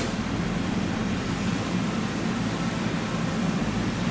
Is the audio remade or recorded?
recorded